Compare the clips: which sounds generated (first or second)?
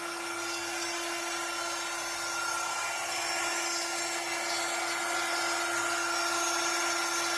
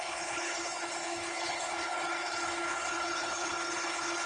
second